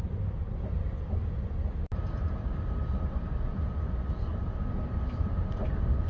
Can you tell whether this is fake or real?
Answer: real